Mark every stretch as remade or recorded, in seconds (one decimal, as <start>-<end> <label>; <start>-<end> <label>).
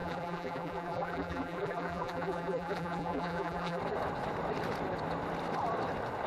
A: 0.0-3.8 remade; 3.8-6.3 recorded